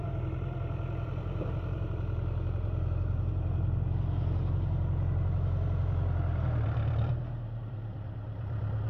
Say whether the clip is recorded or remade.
remade